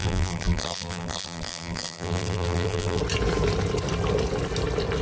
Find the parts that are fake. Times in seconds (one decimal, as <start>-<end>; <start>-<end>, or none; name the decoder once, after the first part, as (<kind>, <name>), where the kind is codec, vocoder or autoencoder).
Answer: 0.0-3.0 (vocoder, BigVGAN v2)